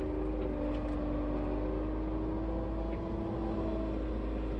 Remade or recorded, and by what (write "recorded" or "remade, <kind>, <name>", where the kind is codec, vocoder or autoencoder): recorded